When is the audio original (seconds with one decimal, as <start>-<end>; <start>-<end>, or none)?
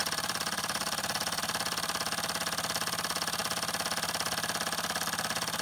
1.4-5.6